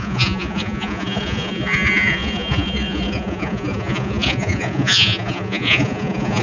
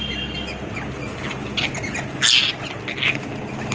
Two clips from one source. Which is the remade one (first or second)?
first